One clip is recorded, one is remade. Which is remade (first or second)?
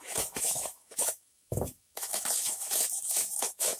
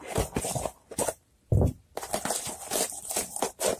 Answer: first